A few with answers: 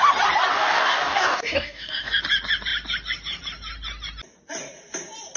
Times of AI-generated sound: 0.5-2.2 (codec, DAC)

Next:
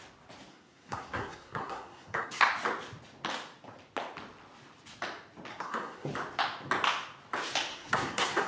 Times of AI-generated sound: 0.5-2.5 (codec, SNAC); 5.5-6.1; 7.7-8.5

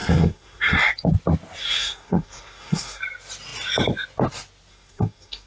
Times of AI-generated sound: 0.0-0.8 (codec, SNAC); 1.6-3.0; 4.7-5.5

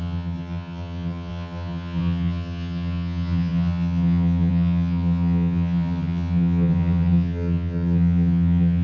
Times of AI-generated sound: 0.0-8.8 (vocoder, HiFi-GAN)

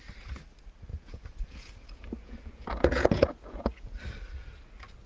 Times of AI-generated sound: 0.9-4.0 (vocoder, Vocos)

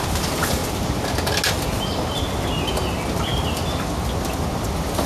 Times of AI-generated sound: none

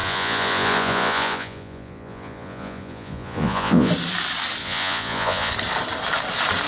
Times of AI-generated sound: 0.0-3.9 (vocoder, Vocos); 4.6-5.5

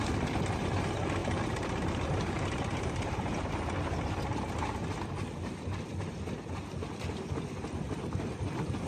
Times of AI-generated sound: 1.2-3.5 (vocoder, BigVGAN v2)